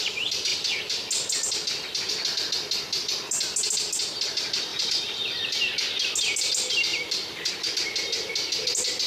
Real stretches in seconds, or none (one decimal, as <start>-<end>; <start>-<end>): 0.0-4.7; 5.4-6.9; 7.5-9.1